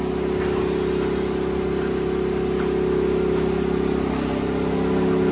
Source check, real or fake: real